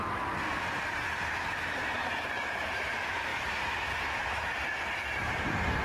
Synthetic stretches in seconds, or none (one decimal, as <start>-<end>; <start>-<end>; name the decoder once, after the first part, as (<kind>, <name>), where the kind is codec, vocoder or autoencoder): 3.3-5.8 (vocoder, BigVGAN v2)